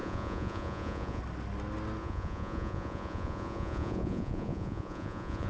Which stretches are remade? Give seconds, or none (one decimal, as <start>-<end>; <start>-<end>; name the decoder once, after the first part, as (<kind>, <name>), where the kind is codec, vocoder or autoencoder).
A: 0.0-1.2 (vocoder, Vocos); 2.0-5.5